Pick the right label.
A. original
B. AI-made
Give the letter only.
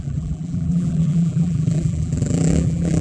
B